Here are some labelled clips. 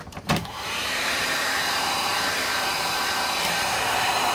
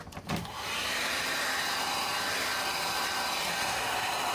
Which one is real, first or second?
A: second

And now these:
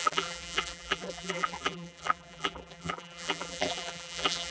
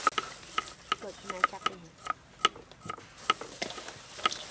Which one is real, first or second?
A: second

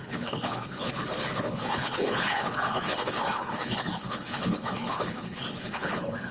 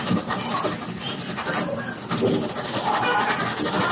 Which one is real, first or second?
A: second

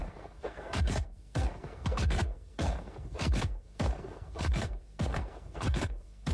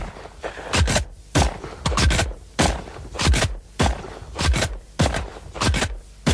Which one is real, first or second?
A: second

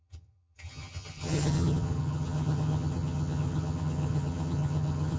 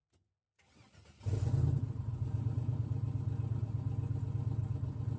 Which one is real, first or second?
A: second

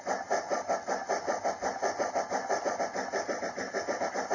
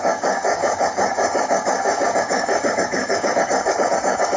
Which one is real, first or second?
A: first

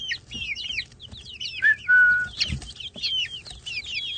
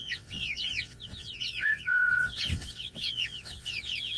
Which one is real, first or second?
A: first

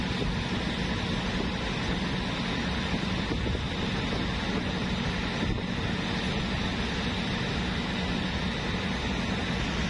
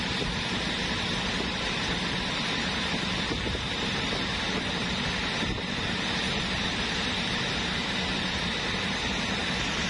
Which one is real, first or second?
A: first